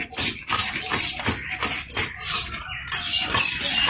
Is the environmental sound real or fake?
real